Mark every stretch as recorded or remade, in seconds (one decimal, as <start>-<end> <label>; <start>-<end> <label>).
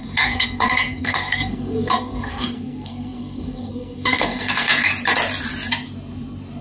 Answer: 0.0-4.9 remade; 4.9-6.6 recorded